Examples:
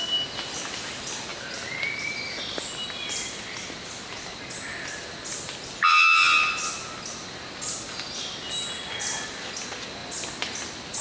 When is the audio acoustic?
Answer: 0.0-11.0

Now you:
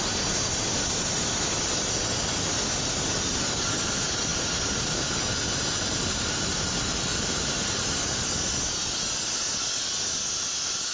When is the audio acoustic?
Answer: 0.0-10.9

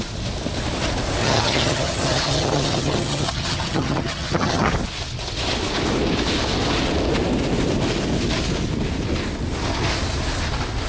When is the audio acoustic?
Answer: 0.0-1.2; 4.7-10.9

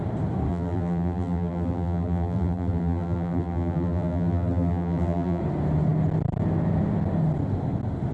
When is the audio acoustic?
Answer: 0.0-0.5; 5.4-8.1